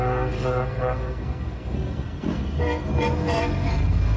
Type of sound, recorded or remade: remade